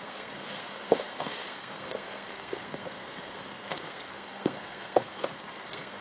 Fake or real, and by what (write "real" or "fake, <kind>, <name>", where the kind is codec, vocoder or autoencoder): fake, codec, SNAC